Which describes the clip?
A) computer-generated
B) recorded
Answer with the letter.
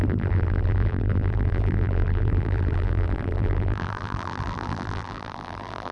A